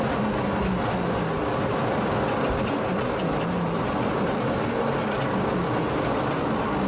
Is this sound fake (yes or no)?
no